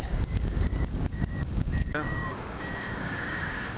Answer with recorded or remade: remade